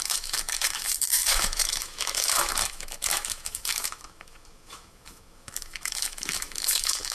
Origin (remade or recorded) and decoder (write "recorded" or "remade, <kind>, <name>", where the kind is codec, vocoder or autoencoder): remade, autoencoder, DAC-VAE